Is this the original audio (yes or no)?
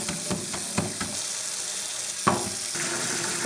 yes